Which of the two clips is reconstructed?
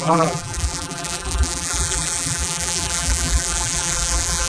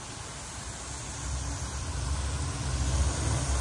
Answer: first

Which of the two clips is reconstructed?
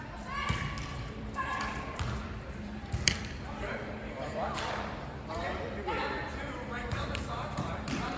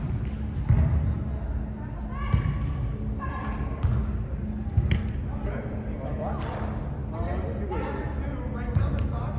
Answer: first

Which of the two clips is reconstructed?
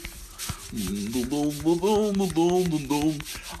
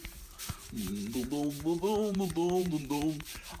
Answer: second